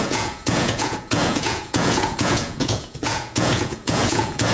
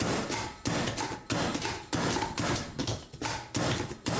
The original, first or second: second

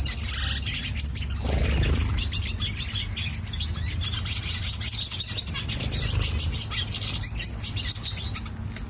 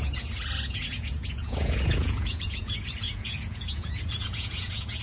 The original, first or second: first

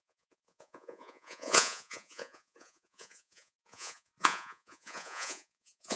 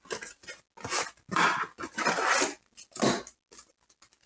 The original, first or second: second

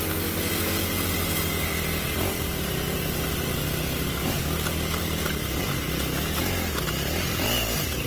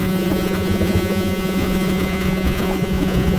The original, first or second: first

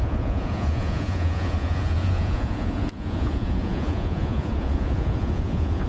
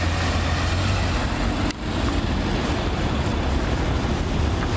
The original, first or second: second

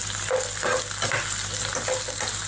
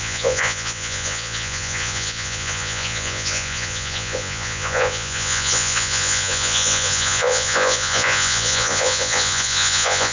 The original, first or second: first